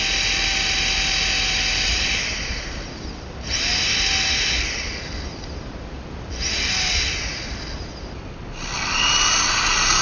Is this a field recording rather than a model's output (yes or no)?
yes